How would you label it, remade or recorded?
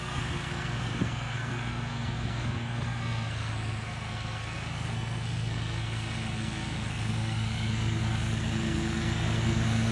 remade